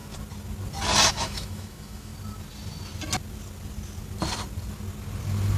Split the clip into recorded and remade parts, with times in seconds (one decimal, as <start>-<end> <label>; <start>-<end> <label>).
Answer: 0.0-1.1 recorded; 1.1-2.1 remade; 2.1-5.6 recorded